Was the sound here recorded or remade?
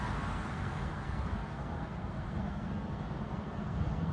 remade